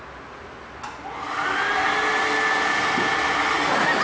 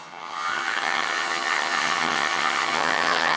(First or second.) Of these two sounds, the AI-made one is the second